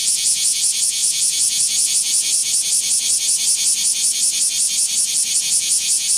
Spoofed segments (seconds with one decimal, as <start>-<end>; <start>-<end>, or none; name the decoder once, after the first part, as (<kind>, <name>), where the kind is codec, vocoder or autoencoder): 0.0-2.4 (vocoder, Vocos); 5.4-6.2